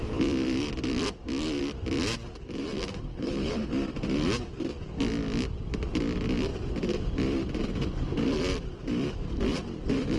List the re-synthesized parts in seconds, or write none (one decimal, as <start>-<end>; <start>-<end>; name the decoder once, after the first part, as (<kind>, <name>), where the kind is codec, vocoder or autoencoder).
3.1-3.7 (codec, HILCodec)